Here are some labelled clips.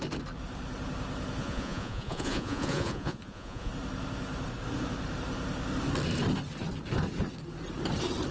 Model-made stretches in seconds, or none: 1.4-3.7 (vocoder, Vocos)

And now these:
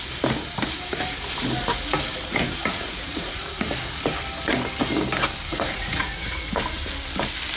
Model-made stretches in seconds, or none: 2.3-4.0 (vocoder, Vocos); 5.5-6.6